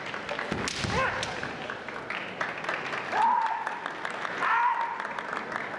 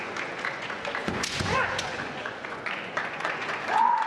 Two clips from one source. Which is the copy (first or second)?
second